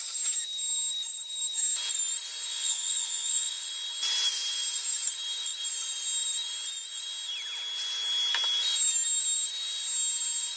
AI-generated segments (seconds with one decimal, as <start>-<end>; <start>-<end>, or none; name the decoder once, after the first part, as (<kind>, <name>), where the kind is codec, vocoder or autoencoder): 2.5-3.7 (vocoder, Vocos)